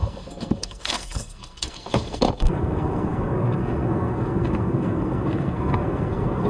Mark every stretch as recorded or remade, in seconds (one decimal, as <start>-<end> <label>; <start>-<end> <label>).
0.0-6.5 remade